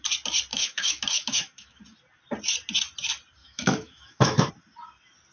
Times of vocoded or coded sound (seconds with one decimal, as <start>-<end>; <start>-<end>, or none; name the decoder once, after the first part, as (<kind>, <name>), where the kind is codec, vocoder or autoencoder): 0.5-1.8 (autoencoder, DAC-VAE); 3.4-4.5

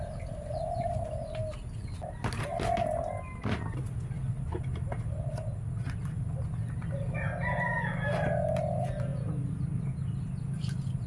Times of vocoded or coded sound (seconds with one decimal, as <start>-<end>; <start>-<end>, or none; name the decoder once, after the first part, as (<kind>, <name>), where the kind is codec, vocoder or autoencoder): none

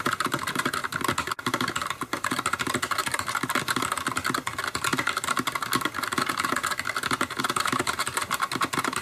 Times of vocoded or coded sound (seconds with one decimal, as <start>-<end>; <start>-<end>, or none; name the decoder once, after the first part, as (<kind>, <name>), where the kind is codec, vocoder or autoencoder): 0.0-0.8 (vocoder, BigVGAN v2); 1.9-3.0; 7.4-9.0

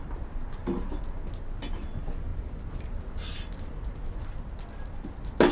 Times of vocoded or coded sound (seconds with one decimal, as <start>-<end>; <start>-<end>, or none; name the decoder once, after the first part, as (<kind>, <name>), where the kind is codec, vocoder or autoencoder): none

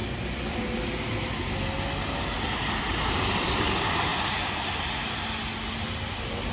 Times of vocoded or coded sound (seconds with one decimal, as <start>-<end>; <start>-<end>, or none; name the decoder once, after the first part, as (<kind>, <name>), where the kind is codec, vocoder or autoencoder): none